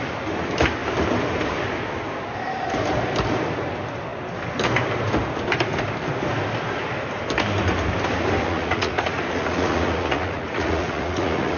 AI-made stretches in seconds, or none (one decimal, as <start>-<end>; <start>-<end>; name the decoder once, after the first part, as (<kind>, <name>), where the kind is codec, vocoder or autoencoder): 8.4-11.6 (vocoder, Vocos)